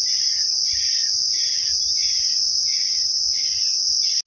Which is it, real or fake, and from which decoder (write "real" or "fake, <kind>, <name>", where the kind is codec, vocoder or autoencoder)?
real